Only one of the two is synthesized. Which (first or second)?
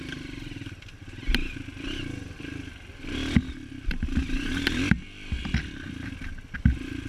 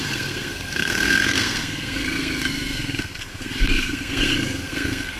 second